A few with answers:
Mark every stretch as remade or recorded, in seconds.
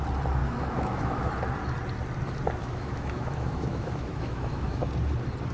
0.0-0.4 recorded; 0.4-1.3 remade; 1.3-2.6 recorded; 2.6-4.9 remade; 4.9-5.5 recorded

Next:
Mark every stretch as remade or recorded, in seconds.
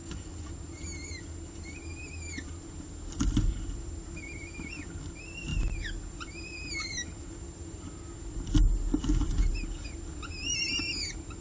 0.0-0.5 remade; 0.5-11.4 recorded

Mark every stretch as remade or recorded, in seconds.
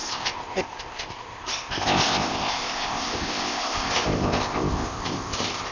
0.0-5.7 remade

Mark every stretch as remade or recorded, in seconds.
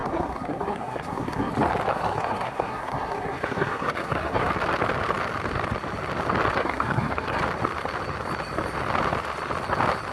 0.0-1.5 remade; 1.5-1.9 recorded; 1.9-4.5 remade; 4.5-6.6 recorded; 6.6-7.4 remade; 7.4-10.1 recorded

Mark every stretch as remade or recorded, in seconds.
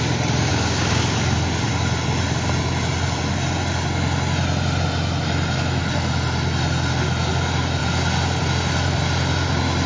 0.0-0.5 recorded; 0.5-1.0 remade; 1.0-9.9 recorded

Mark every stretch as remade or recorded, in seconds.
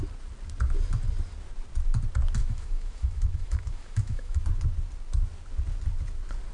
0.0-2.4 recorded; 2.4-4.4 remade; 4.4-6.5 recorded